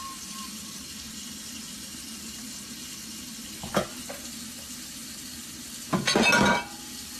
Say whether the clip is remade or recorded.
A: recorded